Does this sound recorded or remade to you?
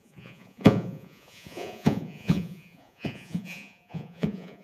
remade